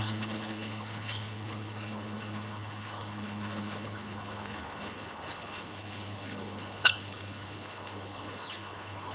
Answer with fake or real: fake